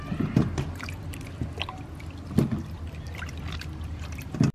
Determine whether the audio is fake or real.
real